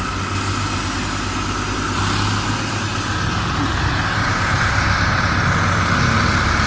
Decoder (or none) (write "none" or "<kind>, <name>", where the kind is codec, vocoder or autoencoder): none